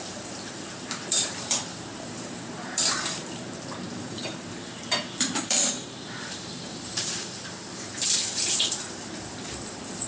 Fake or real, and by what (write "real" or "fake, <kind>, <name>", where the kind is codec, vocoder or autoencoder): fake, vocoder, BigVGAN v2